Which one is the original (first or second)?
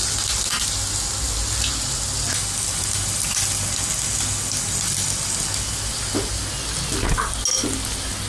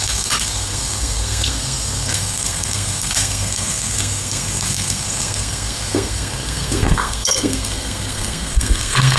first